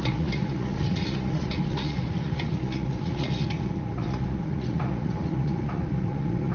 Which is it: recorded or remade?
remade